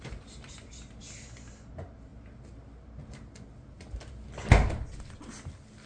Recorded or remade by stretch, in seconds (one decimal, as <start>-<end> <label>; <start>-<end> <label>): 0.0-5.9 recorded